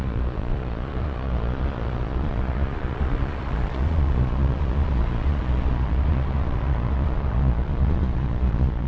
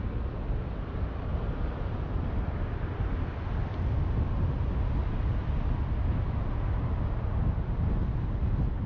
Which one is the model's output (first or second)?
first